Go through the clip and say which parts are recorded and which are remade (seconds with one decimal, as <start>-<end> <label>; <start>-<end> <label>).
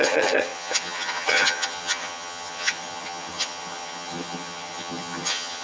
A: 0.0-5.6 remade